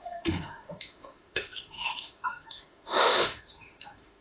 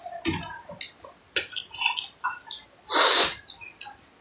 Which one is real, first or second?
second